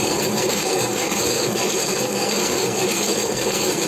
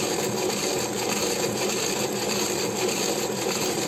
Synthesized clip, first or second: first